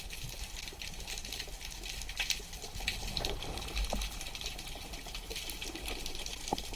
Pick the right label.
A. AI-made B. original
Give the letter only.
B